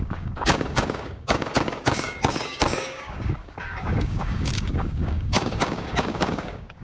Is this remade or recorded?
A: remade